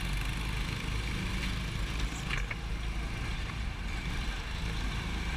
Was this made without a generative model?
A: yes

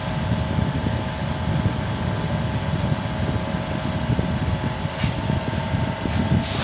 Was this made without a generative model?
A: yes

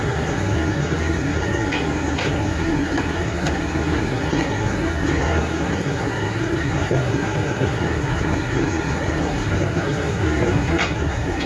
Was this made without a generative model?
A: no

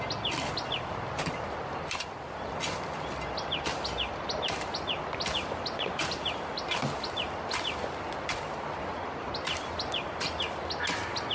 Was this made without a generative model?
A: yes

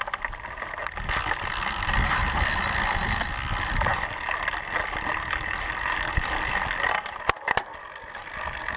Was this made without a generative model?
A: yes